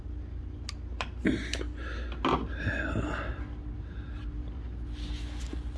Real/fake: real